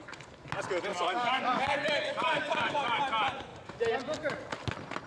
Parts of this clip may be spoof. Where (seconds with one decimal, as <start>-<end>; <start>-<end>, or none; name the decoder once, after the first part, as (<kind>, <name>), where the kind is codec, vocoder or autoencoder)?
0.9-3.0 (codec, DAC)